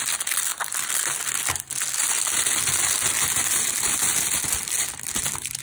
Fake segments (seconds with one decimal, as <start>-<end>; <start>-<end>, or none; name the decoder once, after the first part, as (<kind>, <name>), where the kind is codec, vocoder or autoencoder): none